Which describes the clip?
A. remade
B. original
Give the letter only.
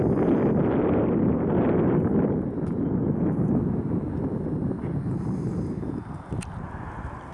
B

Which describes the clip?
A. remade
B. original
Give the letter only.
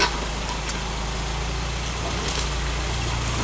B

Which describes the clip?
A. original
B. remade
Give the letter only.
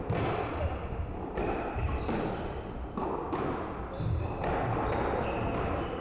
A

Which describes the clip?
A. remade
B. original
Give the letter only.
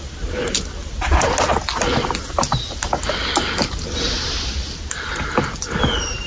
B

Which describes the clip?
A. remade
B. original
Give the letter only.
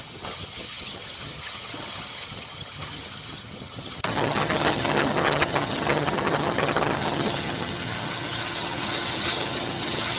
A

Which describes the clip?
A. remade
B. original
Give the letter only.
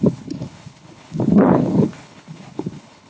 A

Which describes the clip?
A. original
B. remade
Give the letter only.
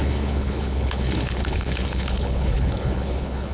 B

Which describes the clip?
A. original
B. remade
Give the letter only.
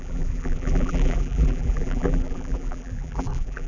B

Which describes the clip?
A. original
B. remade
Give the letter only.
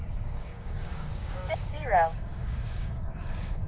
B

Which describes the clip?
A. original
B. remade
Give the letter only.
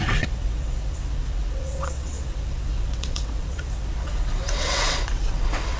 B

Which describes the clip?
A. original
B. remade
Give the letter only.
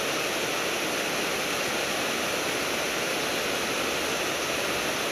A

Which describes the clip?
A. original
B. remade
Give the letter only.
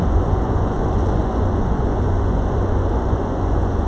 B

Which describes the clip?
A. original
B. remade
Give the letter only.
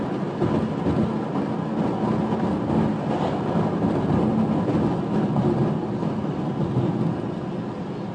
A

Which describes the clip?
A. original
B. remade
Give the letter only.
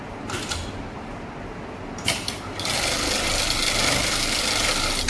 A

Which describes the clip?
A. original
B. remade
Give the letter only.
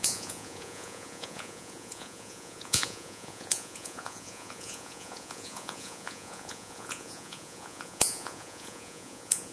B